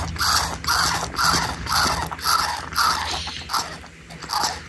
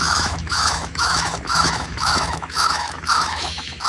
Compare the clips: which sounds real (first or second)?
first